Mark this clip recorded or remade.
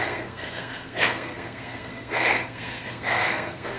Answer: remade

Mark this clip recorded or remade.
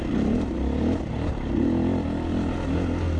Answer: recorded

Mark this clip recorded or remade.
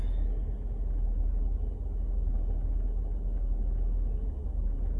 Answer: recorded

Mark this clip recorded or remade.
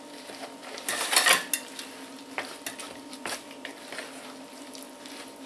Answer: recorded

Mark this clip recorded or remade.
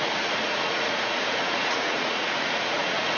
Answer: remade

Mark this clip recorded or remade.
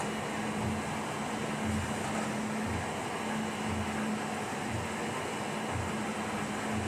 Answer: recorded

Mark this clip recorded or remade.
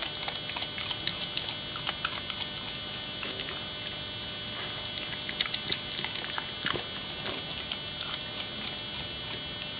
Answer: recorded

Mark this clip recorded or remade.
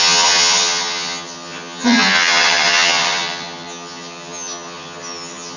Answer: remade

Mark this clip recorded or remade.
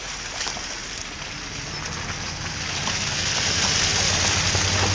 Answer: recorded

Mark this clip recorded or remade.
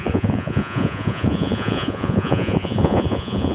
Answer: remade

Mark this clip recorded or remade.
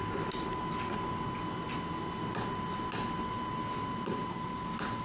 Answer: recorded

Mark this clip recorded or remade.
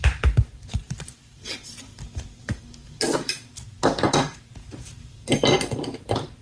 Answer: recorded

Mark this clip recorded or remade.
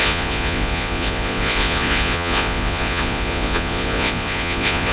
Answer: remade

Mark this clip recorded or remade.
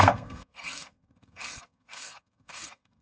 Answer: remade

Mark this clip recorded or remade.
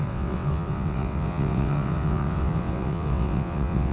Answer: remade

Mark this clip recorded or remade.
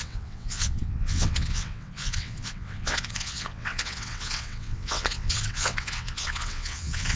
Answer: remade